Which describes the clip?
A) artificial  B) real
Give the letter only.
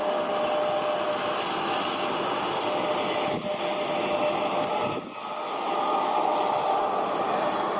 B